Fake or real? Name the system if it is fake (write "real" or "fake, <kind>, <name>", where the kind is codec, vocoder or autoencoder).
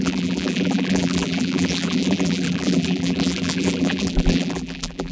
fake, vocoder, BigVGAN v2